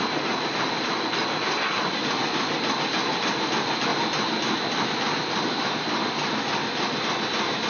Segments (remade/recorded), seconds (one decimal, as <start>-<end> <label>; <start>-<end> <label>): 0.0-7.7 recorded